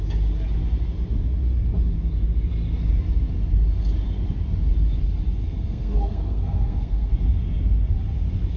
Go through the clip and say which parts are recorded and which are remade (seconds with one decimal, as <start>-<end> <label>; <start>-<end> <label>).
0.0-5.4 recorded; 5.4-7.1 remade; 7.1-8.6 recorded